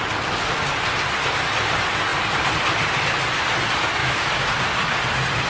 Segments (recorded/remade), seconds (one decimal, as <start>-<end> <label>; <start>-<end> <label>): 0.0-4.0 recorded; 4.0-4.6 remade; 4.6-5.5 recorded